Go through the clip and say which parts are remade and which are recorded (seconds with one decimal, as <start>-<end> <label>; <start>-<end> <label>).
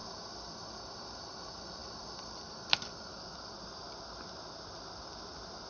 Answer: 0.0-1.8 recorded; 1.8-3.7 remade; 3.7-5.7 recorded